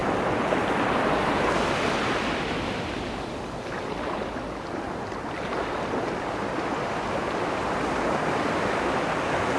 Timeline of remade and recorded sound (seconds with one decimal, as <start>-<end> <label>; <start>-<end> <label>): 0.0-9.6 recorded